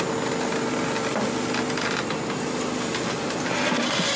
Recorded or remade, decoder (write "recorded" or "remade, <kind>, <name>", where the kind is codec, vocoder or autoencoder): recorded